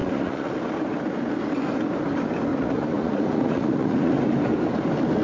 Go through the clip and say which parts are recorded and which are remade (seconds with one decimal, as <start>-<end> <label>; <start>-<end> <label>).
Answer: 0.0-0.5 remade; 0.5-2.5 recorded; 2.5-4.2 remade; 4.2-5.2 recorded